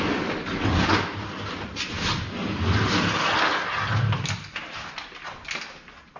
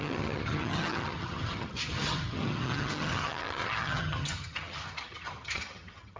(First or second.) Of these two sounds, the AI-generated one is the second